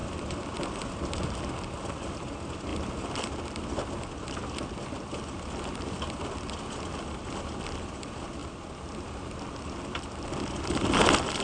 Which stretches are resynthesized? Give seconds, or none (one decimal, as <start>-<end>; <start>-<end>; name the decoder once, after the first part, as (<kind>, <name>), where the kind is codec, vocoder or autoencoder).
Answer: none